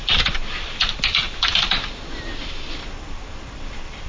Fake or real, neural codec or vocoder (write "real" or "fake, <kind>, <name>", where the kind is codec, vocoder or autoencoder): real